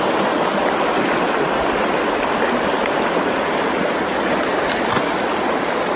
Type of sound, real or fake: real